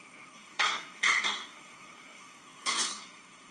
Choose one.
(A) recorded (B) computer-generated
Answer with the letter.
B